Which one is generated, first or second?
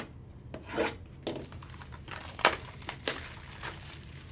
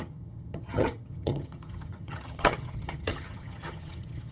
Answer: second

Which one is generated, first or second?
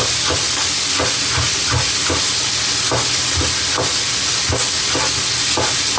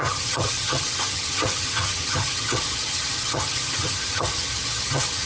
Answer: second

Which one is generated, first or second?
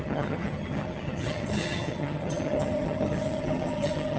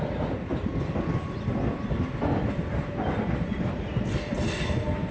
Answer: first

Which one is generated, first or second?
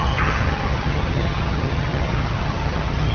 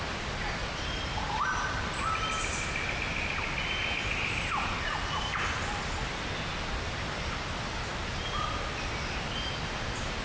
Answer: first